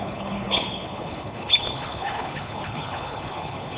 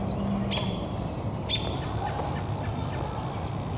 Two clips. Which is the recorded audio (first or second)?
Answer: second